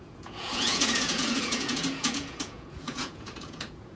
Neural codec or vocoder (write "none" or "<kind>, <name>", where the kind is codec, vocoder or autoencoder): vocoder, Vocos